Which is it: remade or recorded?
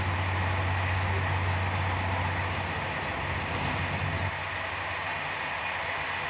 recorded